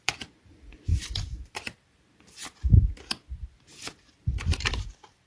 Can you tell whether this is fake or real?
fake